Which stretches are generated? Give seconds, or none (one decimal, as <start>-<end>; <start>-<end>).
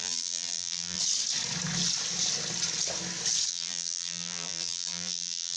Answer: 0.0-1.0; 3.5-5.6